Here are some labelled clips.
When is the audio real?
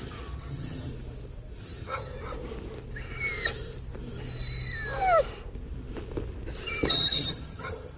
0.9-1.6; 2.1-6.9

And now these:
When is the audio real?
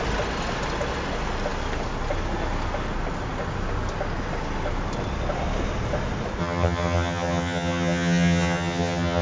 0.0-6.4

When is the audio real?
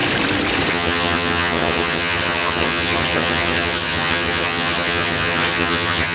0.0-0.7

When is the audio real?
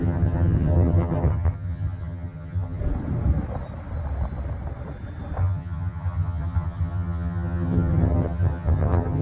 2.8-5.4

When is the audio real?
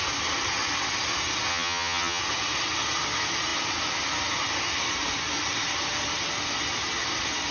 0.0-1.5; 2.2-7.5